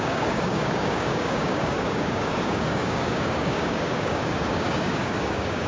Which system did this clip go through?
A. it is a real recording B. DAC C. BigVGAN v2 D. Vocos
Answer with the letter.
B